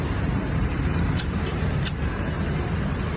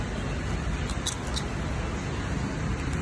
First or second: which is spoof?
first